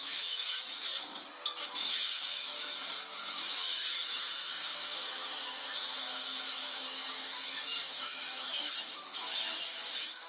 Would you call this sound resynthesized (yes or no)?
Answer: yes